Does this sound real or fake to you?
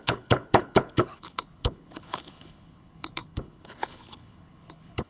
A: fake